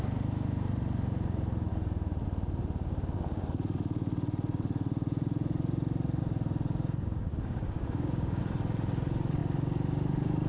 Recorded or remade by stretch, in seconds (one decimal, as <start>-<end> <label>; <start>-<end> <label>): 0.0-7.3 recorded; 7.3-8.4 remade; 8.4-10.5 recorded